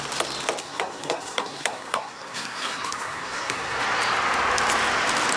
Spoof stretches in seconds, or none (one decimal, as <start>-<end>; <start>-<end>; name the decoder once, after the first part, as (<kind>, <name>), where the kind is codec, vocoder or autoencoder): 0.6-3.8 (codec, SNAC)